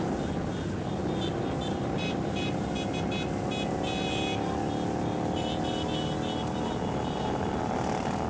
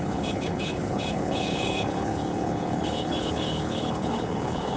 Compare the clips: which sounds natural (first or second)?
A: first